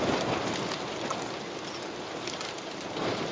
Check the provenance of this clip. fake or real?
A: real